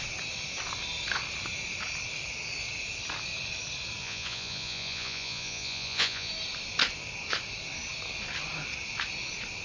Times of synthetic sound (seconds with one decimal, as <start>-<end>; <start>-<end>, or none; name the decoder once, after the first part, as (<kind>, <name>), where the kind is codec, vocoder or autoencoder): 4.0-6.3 (vocoder, Vocos)